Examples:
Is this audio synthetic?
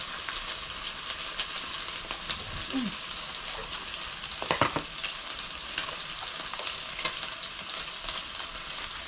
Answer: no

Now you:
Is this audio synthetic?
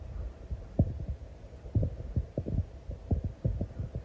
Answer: no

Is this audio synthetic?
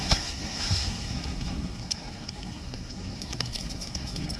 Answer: yes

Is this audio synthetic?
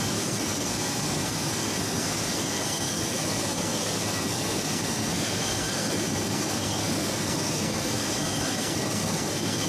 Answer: yes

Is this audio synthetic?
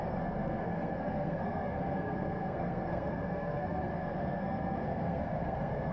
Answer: yes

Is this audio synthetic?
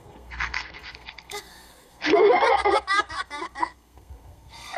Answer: yes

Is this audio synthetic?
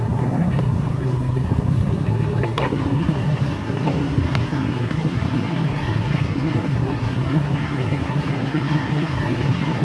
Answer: yes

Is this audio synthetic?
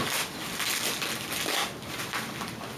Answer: no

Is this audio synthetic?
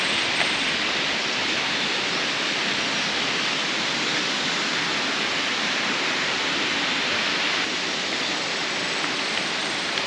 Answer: no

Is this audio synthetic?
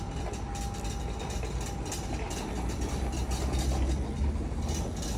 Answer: no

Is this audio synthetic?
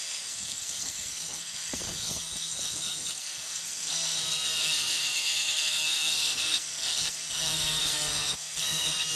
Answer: yes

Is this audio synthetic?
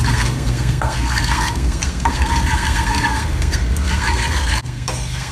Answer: yes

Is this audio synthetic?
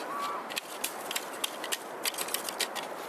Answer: no